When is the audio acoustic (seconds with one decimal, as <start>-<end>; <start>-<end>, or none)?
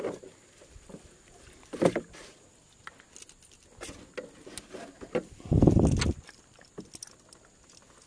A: 0.0-8.1